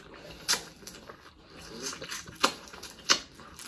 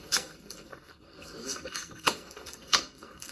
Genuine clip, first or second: first